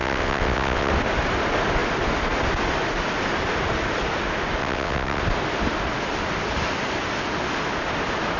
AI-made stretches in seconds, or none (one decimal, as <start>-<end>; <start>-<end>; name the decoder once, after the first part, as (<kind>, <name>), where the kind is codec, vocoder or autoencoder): 0.0-0.9 (vocoder, WaveNeXt); 4.6-5.2